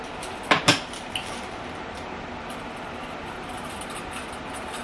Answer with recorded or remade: recorded